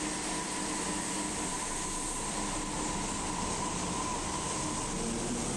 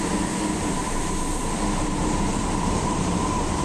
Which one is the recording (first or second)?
first